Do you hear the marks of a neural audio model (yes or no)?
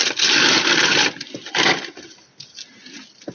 no